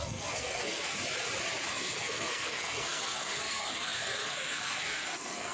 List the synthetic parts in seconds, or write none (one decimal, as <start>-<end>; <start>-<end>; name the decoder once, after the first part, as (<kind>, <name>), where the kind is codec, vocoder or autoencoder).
0.0-0.9 (codec, SNAC); 1.7-5.5